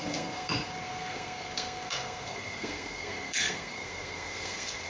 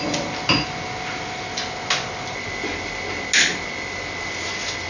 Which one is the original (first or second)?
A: second